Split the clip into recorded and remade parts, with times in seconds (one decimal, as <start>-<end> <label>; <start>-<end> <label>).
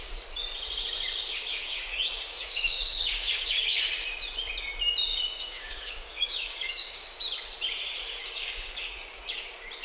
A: 0.0-1.6 recorded; 1.6-3.8 remade; 3.8-5.1 recorded; 5.1-7.2 remade; 7.2-8.2 recorded; 8.2-9.2 remade; 9.2-9.8 recorded